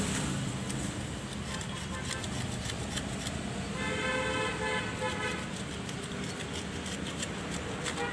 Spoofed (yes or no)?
no